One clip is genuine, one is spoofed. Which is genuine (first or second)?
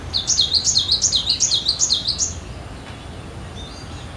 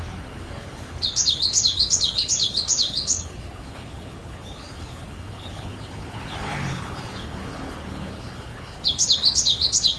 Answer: first